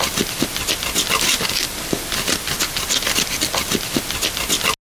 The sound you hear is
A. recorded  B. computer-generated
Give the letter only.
A